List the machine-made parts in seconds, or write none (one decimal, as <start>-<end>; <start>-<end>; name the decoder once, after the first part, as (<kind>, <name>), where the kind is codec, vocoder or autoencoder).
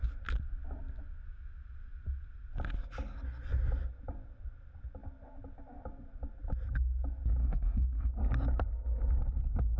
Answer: 7.4-8.1 (autoencoder, DAC-VAE)